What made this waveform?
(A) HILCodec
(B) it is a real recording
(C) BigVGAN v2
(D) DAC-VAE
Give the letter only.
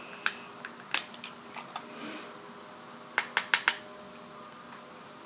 B